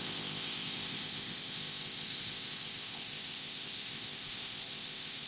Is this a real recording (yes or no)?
no